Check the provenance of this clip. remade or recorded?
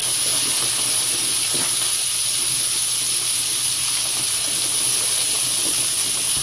recorded